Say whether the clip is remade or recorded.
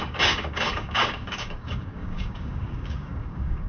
remade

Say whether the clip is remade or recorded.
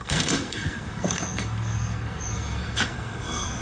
remade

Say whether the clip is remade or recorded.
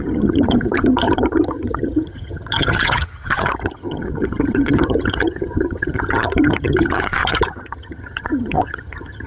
remade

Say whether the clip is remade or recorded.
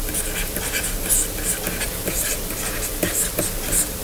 recorded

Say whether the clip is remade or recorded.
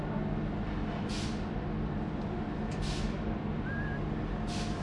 remade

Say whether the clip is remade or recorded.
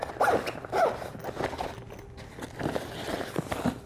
recorded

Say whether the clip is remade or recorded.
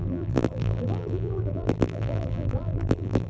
remade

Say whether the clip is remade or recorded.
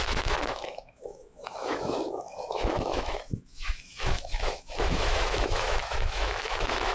remade